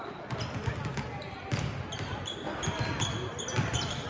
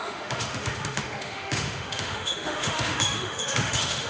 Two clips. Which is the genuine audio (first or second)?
first